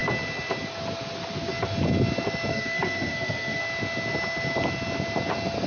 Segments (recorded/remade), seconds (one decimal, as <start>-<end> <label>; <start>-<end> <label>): 0.0-2.5 recorded; 2.5-3.6 remade; 3.6-5.7 recorded